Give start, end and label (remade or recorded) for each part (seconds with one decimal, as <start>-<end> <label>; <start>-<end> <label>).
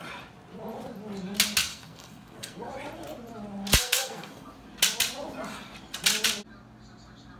0.0-1.7 recorded; 1.7-2.7 remade; 2.7-3.8 recorded; 3.8-4.5 remade; 4.5-7.4 recorded